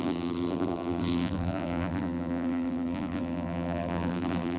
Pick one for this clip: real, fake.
fake